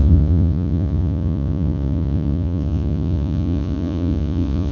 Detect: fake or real fake